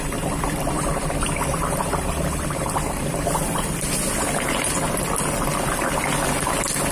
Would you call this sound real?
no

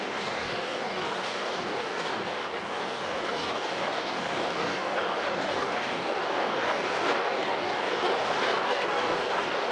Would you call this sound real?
no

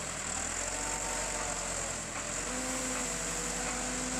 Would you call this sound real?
yes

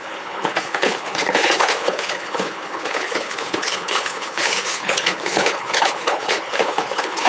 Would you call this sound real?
no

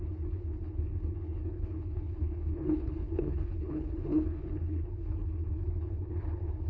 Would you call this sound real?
no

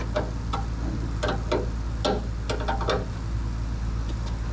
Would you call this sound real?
yes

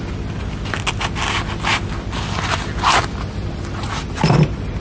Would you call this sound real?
yes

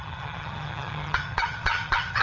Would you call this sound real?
no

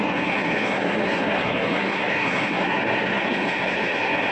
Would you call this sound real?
no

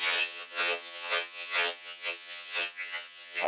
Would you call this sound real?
no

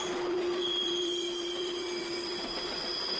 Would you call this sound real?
no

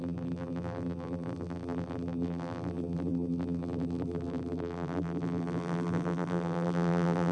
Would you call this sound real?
no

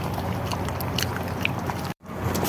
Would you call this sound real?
no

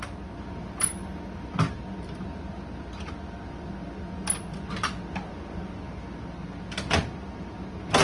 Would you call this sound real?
yes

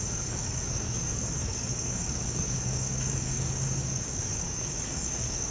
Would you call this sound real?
no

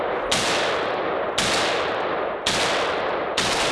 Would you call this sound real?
yes